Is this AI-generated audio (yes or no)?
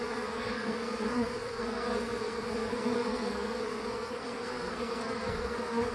yes